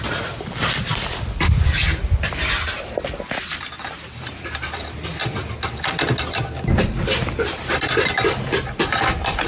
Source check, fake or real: fake